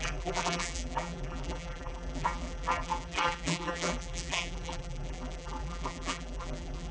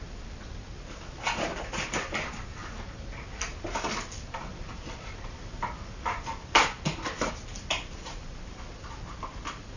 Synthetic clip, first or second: first